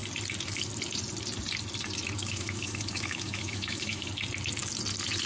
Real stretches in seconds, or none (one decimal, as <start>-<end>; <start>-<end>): 0.0-2.2; 4.1-5.3